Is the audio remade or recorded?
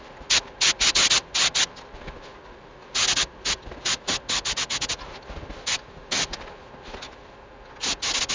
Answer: recorded